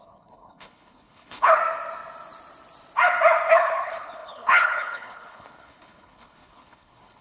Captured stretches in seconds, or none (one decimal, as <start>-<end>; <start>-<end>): 1.6-3.5